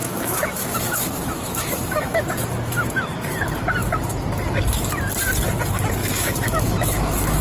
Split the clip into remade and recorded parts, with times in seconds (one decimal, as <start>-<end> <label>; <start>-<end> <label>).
0.0-2.2 remade; 2.2-6.0 recorded; 6.0-7.4 remade